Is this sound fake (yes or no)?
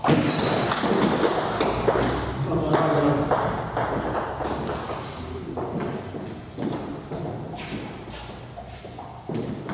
no